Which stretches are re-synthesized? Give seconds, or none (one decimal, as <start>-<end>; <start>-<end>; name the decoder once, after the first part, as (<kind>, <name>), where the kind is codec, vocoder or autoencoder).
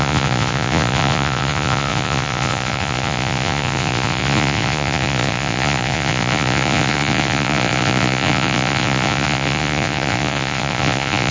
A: 0.0-11.3 (vocoder, Vocos)